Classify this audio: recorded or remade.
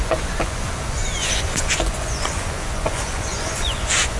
remade